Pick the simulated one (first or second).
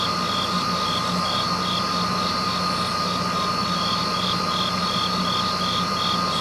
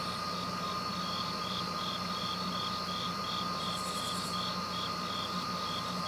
second